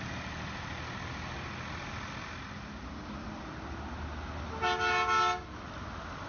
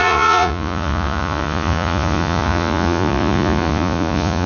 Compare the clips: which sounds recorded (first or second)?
first